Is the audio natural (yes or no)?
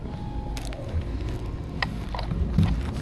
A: yes